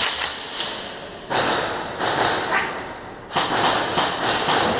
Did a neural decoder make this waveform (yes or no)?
no